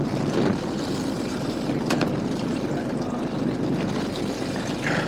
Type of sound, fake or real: fake